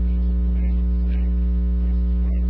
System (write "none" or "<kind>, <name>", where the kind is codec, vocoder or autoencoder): none